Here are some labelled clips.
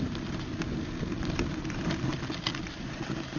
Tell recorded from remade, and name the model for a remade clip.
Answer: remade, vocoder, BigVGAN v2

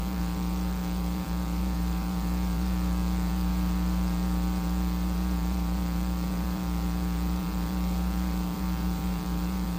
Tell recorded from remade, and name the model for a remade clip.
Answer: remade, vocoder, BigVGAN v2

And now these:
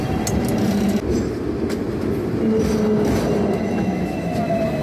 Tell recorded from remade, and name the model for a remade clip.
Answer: recorded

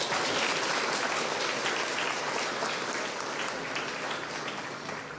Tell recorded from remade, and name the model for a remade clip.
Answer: recorded